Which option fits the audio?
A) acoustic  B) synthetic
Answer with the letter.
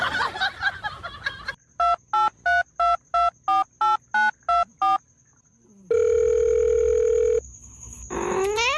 A